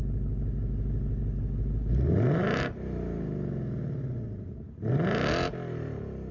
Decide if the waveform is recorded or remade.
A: recorded